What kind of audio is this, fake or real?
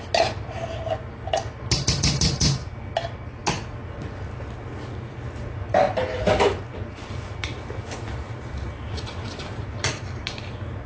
real